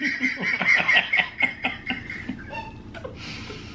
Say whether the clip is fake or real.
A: real